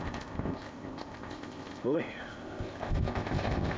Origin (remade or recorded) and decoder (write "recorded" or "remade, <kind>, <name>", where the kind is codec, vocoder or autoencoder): remade, codec, ZipCodec